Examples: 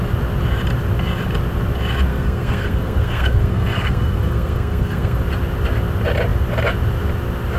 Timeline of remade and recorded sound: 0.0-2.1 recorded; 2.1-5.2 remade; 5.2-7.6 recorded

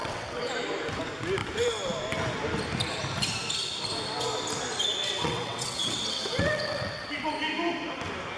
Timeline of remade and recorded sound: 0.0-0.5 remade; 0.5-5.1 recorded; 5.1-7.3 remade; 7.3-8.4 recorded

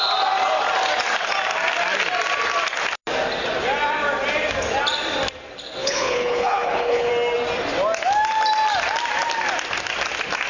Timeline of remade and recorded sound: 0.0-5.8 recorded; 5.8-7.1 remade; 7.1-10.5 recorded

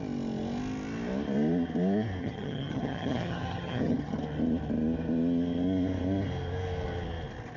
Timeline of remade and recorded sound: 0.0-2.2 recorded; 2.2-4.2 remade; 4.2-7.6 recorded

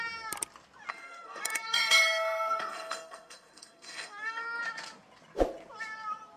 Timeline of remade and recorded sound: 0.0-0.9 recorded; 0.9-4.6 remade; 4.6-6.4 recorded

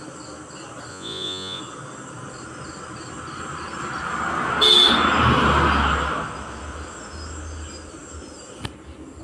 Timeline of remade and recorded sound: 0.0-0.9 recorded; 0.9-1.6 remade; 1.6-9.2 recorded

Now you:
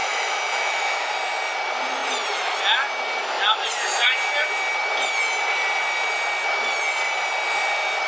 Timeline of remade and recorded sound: 0.0-1.1 remade; 1.1-8.1 recorded